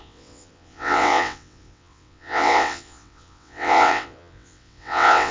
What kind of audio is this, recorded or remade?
remade